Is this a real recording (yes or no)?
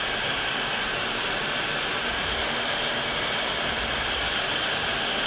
yes